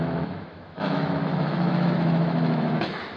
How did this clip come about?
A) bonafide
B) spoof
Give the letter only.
B